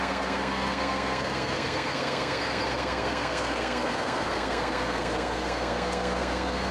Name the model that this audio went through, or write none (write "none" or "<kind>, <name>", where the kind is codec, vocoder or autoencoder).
codec, SNAC